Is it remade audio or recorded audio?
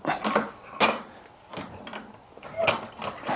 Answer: remade